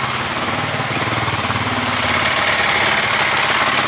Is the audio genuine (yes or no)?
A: yes